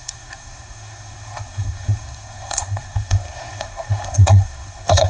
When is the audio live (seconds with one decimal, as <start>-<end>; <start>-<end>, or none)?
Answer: none